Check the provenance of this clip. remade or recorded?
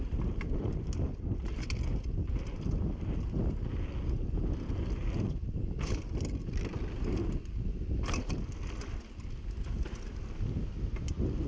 recorded